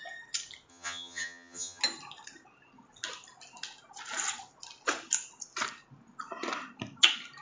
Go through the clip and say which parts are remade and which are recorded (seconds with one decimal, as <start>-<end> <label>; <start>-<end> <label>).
0.0-0.7 recorded; 0.7-1.8 remade; 1.8-7.4 recorded